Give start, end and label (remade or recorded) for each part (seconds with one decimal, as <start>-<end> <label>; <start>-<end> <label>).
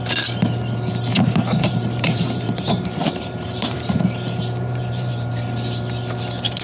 0.0-1.1 recorded; 1.1-5.1 remade; 5.1-6.6 recorded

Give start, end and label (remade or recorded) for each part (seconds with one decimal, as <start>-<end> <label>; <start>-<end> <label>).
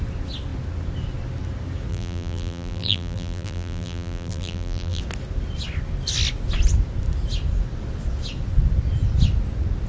0.0-1.9 recorded; 1.9-5.0 remade; 5.0-9.9 recorded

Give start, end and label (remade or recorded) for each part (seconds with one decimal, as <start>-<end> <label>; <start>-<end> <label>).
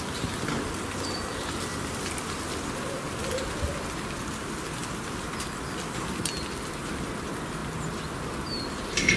0.0-1.7 recorded; 1.7-2.6 remade; 2.6-4.8 recorded; 4.8-6.2 remade; 6.2-9.2 recorded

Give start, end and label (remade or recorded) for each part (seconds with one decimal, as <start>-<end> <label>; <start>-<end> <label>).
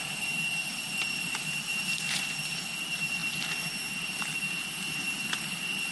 0.0-3.2 remade; 3.2-4.7 recorded; 4.7-5.9 remade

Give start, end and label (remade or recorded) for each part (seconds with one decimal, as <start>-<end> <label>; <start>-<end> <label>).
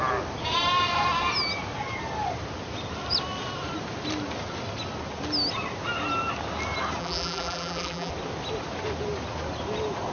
0.0-7.0 recorded; 7.0-8.1 remade; 8.1-10.1 recorded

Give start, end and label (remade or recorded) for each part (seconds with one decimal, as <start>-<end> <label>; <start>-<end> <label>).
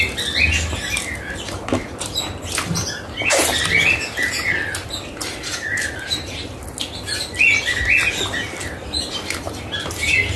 0.0-5.6 recorded; 5.6-6.6 remade; 6.6-10.4 recorded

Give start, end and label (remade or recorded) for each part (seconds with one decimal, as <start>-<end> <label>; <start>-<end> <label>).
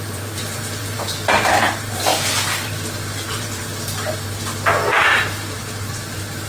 0.0-2.1 remade; 2.1-2.6 recorded; 2.6-3.7 remade; 3.7-4.9 recorded; 4.9-6.5 remade